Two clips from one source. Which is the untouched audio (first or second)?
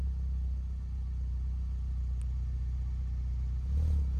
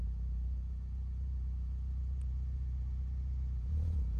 first